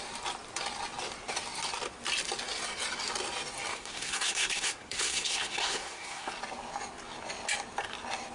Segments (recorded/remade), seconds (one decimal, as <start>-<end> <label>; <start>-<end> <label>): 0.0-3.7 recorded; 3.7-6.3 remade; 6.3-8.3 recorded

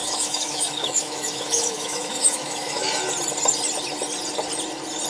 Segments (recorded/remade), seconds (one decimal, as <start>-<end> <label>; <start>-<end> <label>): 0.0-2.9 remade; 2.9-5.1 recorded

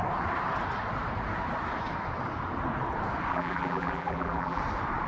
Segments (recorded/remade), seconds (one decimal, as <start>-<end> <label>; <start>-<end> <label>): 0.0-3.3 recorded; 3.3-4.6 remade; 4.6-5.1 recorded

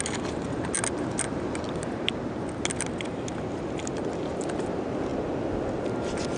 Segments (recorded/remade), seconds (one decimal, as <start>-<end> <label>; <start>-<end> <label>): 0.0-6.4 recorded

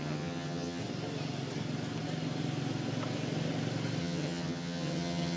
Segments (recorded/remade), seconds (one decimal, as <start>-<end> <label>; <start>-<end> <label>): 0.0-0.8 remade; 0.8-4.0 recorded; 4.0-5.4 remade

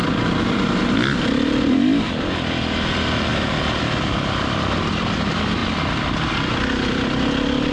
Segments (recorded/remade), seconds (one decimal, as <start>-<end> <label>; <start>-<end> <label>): 0.0-3.3 remade; 3.3-3.8 recorded; 3.8-7.7 remade

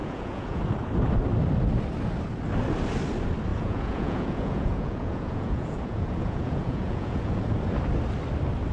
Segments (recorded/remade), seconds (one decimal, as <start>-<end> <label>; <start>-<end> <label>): 0.0-0.6 remade; 0.6-3.5 recorded; 3.5-7.4 remade; 7.4-8.7 recorded

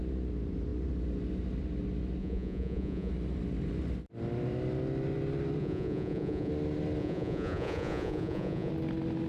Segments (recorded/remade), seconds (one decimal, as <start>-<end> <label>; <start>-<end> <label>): 0.0-2.2 recorded; 2.2-3.1 remade; 3.1-5.6 recorded; 5.6-6.5 remade; 6.5-7.0 recorded; 7.0-8.7 remade; 8.7-9.3 recorded